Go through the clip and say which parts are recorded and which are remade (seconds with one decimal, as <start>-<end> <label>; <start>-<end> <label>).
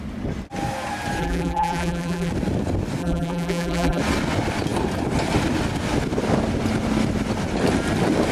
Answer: 0.0-1.2 recorded; 1.2-2.3 remade; 2.3-3.0 recorded; 3.0-4.0 remade; 4.0-8.3 recorded